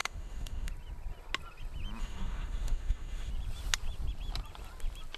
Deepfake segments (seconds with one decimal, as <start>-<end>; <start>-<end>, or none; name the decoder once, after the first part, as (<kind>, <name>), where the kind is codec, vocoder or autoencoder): 0.0-0.7 (autoencoder, DAC-VAE); 2.0-3.3